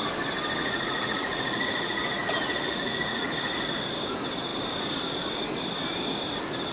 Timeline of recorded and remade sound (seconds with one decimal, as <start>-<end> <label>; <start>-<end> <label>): 0.0-0.6 recorded; 0.6-3.3 remade; 3.3-6.7 recorded